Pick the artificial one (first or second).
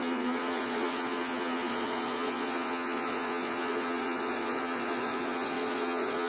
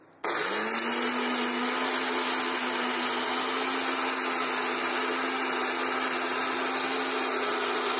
first